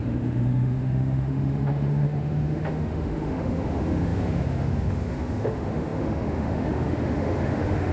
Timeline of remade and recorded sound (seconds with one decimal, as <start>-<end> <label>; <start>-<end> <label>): 0.0-7.9 remade